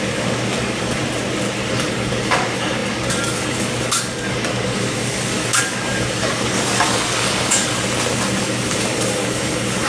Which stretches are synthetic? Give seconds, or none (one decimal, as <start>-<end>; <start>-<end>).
0.0-1.0; 1.7-7.7; 8.4-9.9